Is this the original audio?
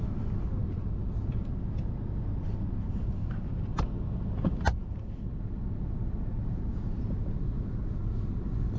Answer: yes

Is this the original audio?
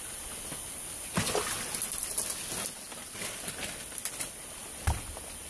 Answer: yes